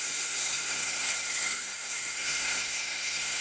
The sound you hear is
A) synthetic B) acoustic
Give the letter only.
A